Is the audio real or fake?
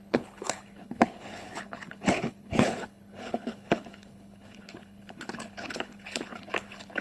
fake